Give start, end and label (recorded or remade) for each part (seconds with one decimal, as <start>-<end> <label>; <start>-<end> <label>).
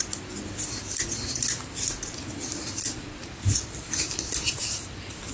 0.0-2.4 recorded; 2.4-5.3 remade